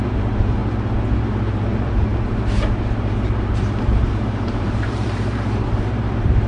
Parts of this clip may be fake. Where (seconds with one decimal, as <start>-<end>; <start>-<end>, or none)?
0.0-0.6; 1.2-6.5